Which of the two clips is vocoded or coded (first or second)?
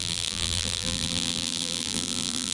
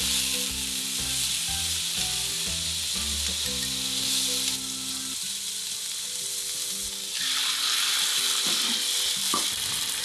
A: first